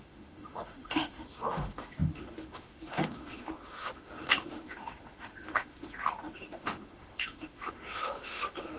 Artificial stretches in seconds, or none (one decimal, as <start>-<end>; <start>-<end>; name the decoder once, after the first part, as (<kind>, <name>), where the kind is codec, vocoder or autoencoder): 0.0-8.8 (autoencoder, DAC-VAE)